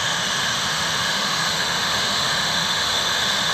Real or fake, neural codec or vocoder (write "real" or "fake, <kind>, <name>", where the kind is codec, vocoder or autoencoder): fake, autoencoder, DAC-VAE